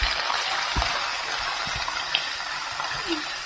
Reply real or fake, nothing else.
real